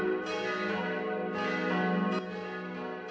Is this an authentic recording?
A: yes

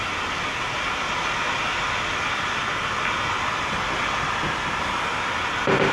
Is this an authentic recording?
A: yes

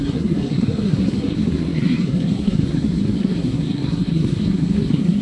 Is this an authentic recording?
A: no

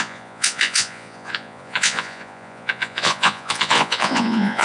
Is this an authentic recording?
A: no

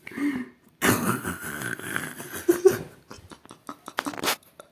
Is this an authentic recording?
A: yes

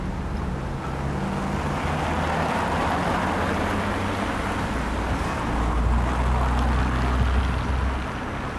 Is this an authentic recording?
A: yes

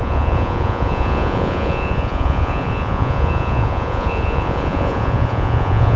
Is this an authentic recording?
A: no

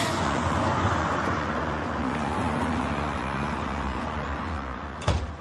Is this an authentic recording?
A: no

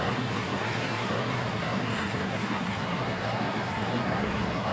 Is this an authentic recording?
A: no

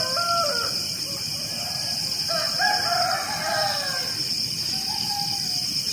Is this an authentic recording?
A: yes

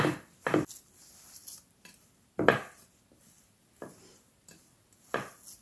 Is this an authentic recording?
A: yes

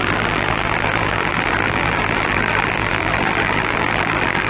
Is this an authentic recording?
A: no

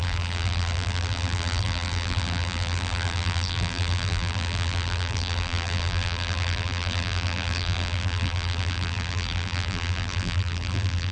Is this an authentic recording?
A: no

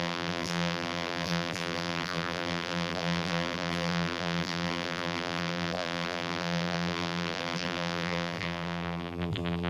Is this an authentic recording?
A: no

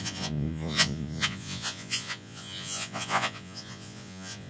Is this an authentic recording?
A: no